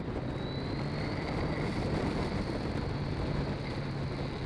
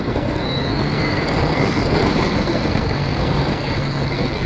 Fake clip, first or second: second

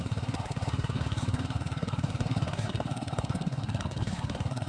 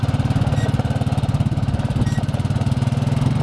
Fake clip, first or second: first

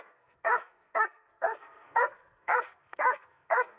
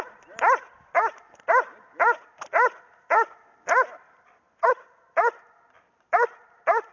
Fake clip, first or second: first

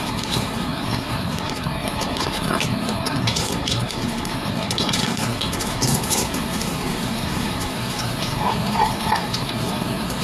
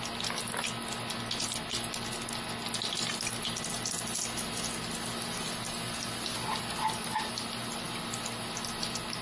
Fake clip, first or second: first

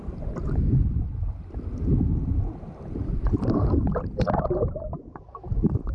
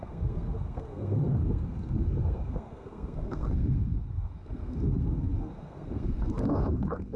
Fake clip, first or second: second